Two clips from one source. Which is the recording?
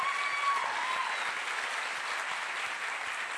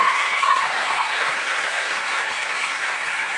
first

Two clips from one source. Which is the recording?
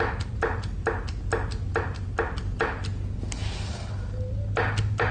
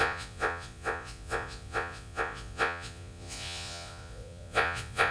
first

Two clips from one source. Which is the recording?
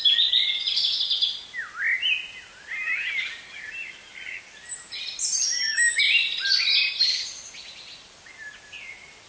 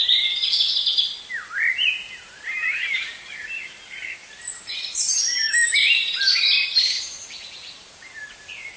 first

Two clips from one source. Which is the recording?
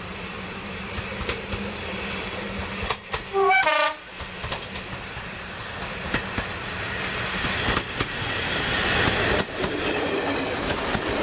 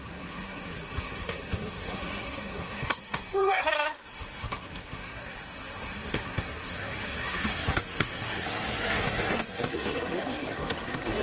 first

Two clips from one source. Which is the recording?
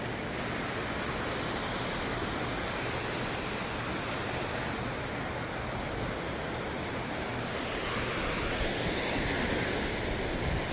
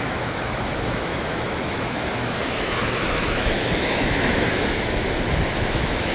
first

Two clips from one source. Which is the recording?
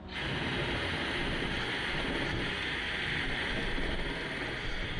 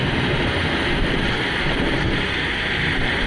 first